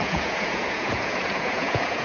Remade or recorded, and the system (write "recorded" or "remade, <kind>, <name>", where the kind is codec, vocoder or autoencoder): remade, vocoder, Vocos